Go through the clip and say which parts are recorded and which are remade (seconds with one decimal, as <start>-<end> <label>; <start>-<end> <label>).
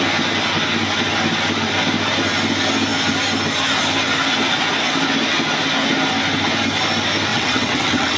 0.0-7.3 recorded; 7.3-8.2 remade